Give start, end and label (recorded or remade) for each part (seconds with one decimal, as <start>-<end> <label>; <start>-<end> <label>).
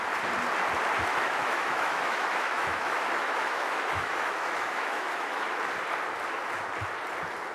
0.0-1.1 recorded; 1.1-5.6 remade; 5.6-7.5 recorded